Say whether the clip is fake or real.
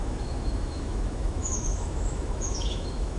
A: fake